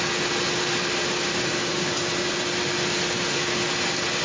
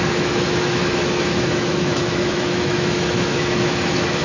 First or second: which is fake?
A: second